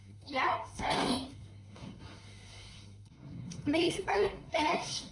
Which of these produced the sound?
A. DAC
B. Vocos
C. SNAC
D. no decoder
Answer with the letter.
C